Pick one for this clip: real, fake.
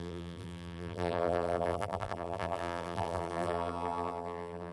fake